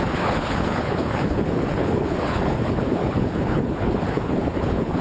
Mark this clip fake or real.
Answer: fake